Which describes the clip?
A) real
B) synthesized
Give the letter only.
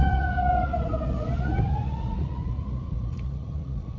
B